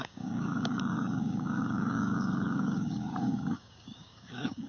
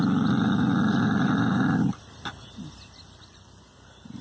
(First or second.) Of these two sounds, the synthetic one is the first